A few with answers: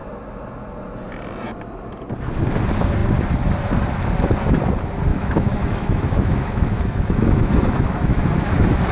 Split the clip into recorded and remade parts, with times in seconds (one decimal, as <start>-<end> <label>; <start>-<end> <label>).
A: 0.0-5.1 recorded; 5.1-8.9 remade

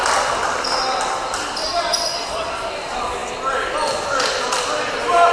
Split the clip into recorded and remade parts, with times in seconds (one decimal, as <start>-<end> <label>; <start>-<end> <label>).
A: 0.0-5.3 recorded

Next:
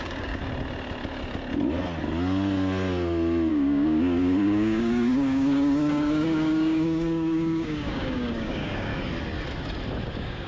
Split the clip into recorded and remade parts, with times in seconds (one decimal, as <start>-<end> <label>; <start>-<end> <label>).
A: 0.0-0.4 remade; 0.4-3.5 recorded; 3.5-8.9 remade; 8.9-10.0 recorded; 10.0-10.5 remade

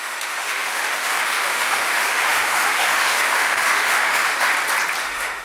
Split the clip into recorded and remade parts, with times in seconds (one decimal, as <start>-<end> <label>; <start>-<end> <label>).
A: 0.0-4.5 remade; 4.5-5.0 recorded; 5.0-5.4 remade